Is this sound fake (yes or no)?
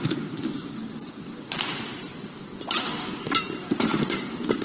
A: no